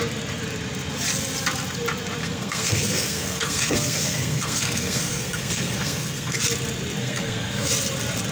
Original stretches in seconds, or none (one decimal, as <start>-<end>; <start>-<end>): 0.0-2.2; 6.4-7.0; 7.7-8.3